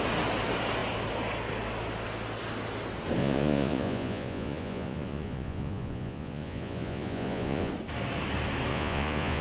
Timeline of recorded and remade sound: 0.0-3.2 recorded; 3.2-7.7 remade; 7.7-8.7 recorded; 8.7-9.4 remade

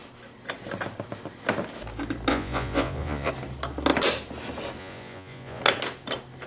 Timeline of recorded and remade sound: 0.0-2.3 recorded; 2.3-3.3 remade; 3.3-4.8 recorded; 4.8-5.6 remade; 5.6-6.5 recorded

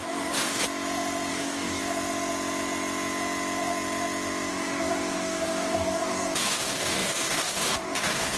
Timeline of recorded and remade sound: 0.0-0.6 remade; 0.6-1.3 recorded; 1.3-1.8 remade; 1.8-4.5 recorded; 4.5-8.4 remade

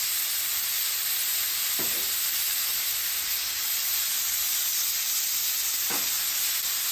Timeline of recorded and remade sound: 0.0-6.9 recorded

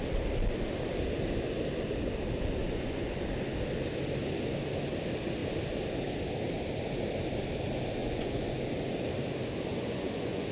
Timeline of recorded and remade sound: 0.0-2.6 recorded; 2.6-3.2 remade; 3.2-8.0 recorded; 8.0-8.6 remade; 8.6-9.7 recorded; 9.7-10.5 remade